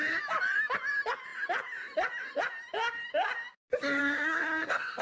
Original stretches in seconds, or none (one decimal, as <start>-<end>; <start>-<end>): 0.0-4.0